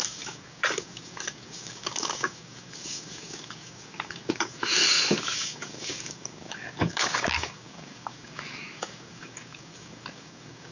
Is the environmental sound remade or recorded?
remade